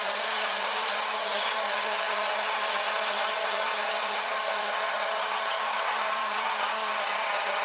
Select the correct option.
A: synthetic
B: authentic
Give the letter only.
A